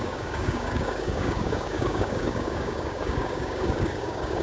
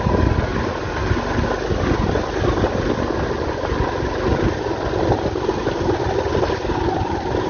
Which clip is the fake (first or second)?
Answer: first